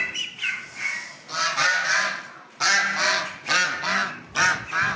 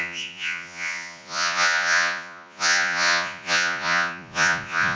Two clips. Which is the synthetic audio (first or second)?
second